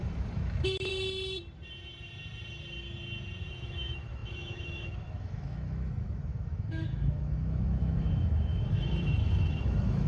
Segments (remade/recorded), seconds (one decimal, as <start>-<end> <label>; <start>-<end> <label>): 0.0-0.9 remade; 0.9-3.5 recorded; 3.5-10.1 remade

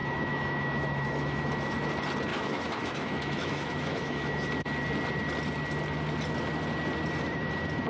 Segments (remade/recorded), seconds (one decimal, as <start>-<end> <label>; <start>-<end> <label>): 0.0-1.9 remade; 1.9-2.3 recorded; 2.3-4.5 remade; 4.5-7.9 recorded

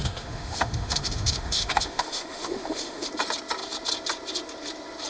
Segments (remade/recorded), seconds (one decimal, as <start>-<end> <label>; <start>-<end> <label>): 0.0-3.1 remade; 3.1-5.1 recorded

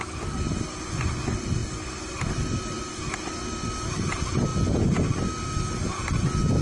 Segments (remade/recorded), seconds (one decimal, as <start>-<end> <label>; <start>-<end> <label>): 0.0-6.6 recorded

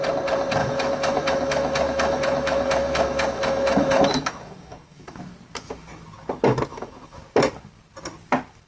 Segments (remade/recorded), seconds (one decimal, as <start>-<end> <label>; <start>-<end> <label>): 0.0-0.6 recorded; 0.6-5.2 remade; 5.2-6.7 recorded; 6.7-7.2 remade; 7.2-8.7 recorded

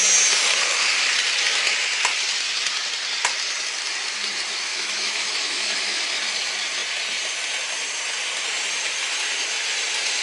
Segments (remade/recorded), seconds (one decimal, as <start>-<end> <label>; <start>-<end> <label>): 0.0-4.7 recorded; 4.7-6.0 remade; 6.0-10.2 recorded

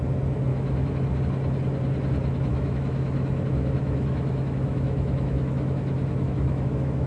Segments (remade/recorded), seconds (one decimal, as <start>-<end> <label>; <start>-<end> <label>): 0.0-0.5 recorded; 0.5-1.2 remade; 1.2-2.5 recorded; 2.5-7.1 remade

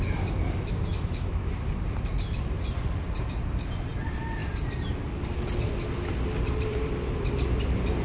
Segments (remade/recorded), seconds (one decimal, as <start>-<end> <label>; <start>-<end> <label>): 0.0-0.9 recorded; 0.9-1.5 remade; 1.5-8.0 recorded